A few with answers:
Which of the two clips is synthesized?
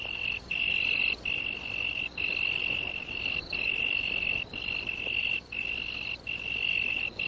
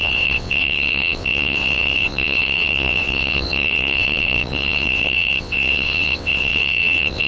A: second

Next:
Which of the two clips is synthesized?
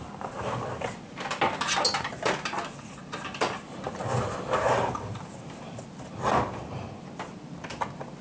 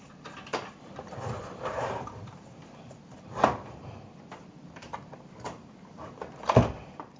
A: second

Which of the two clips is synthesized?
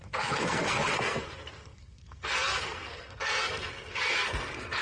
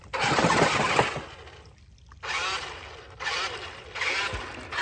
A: first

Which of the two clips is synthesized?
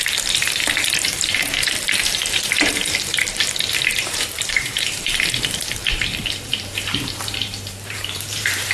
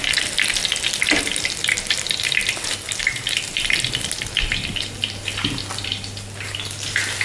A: first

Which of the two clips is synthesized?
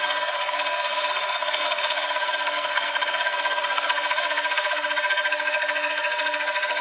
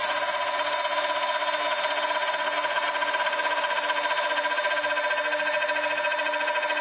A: first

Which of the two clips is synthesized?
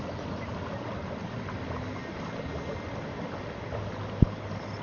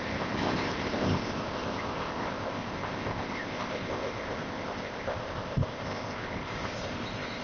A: second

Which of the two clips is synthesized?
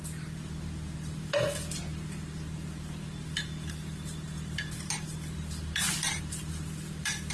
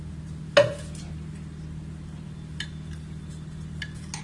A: first